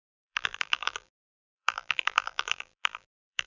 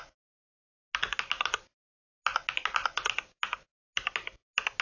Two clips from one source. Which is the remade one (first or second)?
first